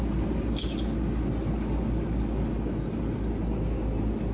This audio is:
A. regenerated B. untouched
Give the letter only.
B